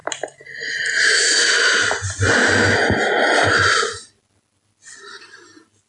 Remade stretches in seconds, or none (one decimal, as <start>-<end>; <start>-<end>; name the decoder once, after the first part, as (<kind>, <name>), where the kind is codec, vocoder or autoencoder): none